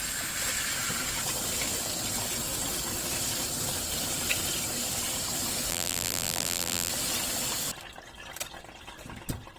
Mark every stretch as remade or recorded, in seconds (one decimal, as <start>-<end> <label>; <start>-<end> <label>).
0.0-5.7 recorded; 5.7-6.9 remade; 6.9-9.6 recorded